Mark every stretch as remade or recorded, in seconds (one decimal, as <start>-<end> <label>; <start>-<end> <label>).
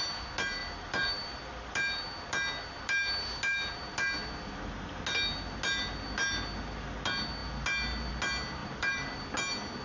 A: 0.0-0.6 recorded; 0.6-1.3 remade; 1.3-8.6 recorded; 8.6-9.2 remade; 9.2-9.8 recorded